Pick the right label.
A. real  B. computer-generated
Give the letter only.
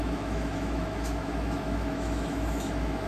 B